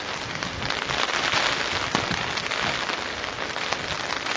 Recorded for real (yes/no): yes